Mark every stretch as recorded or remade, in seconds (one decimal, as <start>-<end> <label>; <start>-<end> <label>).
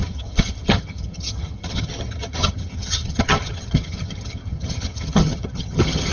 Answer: 0.0-6.1 remade